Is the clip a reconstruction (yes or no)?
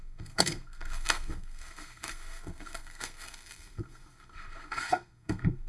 yes